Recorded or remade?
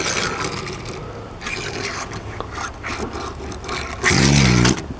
recorded